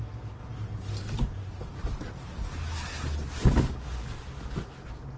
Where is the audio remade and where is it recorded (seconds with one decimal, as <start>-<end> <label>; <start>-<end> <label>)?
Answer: 0.0-5.2 recorded